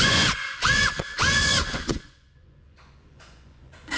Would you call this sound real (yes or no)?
no